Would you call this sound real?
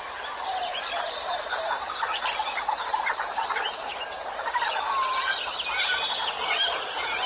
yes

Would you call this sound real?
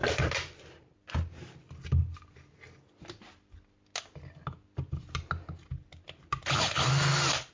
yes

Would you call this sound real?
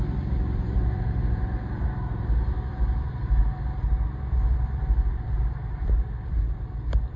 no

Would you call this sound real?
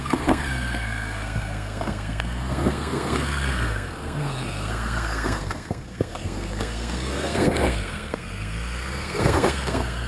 no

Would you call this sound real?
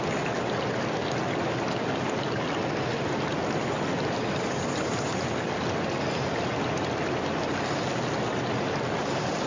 yes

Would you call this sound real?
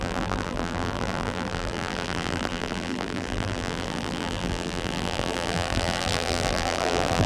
no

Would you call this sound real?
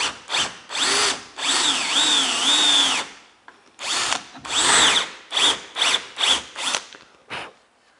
yes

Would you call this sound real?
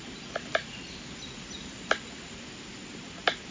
yes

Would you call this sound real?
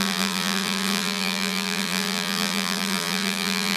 no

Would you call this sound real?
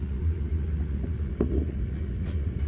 no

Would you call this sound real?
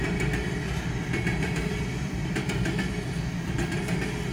yes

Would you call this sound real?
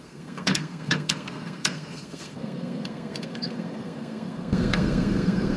no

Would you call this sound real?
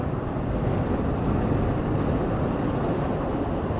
yes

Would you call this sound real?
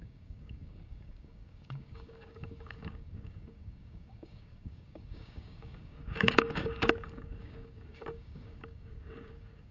no